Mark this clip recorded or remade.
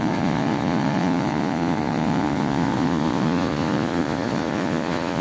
remade